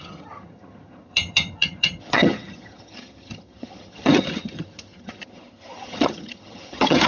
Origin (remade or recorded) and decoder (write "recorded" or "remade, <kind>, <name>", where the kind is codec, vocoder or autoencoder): remade, vocoder, HiFi-GAN